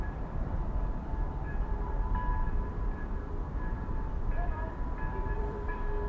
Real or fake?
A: fake